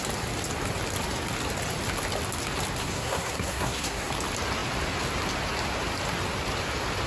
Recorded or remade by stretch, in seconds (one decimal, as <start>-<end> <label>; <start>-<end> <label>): 0.0-2.8 recorded; 2.8-4.1 remade; 4.1-7.1 recorded